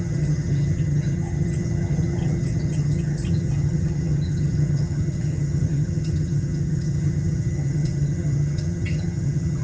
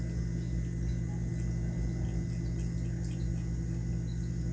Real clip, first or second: second